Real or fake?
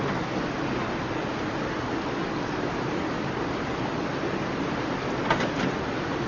real